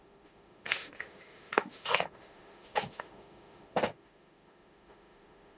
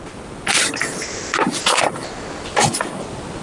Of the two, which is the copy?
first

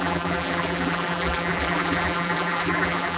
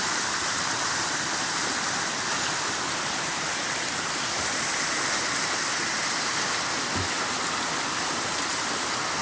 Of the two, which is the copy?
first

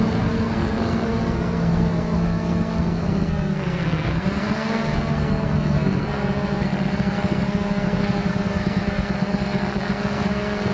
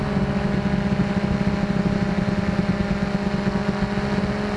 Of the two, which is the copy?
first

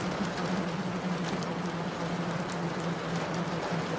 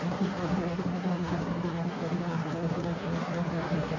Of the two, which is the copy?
second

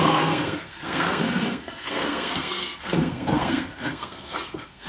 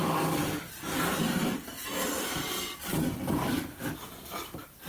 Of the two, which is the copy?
first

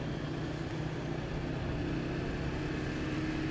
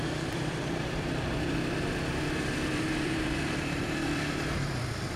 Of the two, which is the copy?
second